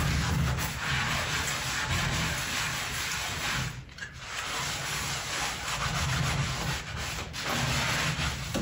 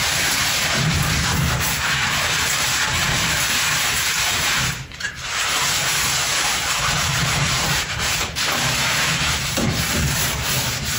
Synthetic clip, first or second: second